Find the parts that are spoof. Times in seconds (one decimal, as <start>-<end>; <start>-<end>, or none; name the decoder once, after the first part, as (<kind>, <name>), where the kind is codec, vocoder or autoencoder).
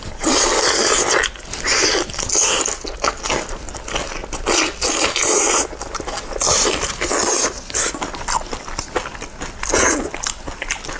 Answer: 4.2-7.6 (vocoder, BigVGAN v2)